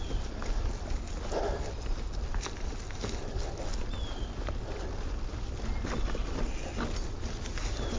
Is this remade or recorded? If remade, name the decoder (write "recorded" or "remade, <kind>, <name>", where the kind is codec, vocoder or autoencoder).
recorded